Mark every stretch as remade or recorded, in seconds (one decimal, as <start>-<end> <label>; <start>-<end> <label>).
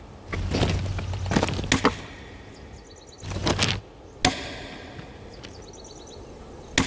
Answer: 0.0-6.9 recorded